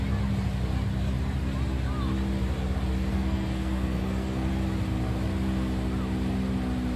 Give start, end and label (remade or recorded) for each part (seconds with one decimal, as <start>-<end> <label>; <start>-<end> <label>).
0.0-3.1 recorded; 3.1-4.5 remade; 4.5-7.0 recorded

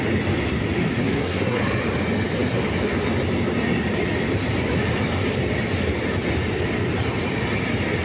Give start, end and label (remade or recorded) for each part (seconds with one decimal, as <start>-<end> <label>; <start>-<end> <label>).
0.0-1.0 recorded; 1.0-1.6 remade; 1.6-8.0 recorded

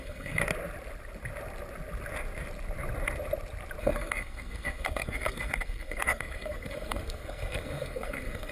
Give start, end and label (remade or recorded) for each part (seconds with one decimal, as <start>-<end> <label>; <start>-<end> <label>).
0.0-0.4 remade; 0.4-3.8 recorded; 3.8-8.5 remade

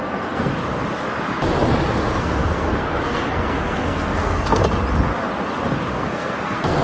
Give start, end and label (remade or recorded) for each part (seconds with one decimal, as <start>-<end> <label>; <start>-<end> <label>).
0.0-0.5 remade; 0.5-2.2 recorded; 2.2-4.6 remade; 4.6-5.9 recorded; 5.9-6.8 remade

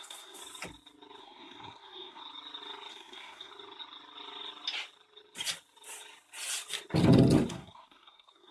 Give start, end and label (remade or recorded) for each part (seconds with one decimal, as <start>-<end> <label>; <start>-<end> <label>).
0.0-0.4 remade; 0.4-1.2 recorded; 1.2-2.2 remade; 2.2-2.9 recorded; 2.9-3.5 remade; 3.5-7.5 recorded; 7.5-8.5 remade

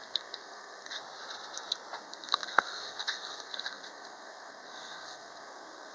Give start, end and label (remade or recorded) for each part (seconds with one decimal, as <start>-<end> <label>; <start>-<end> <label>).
0.0-1.0 remade; 1.0-2.0 recorded; 2.0-5.9 remade

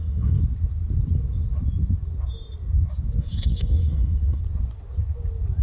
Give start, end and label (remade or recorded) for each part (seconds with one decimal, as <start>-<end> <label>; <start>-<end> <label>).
0.0-0.4 remade; 0.4-3.2 recorded; 3.2-4.4 remade; 4.4-5.6 recorded

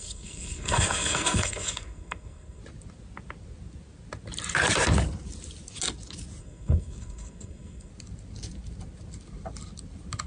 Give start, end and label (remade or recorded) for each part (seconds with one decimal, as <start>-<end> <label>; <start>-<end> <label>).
0.0-2.6 remade; 2.6-6.4 recorded; 6.4-7.9 remade; 7.9-10.3 recorded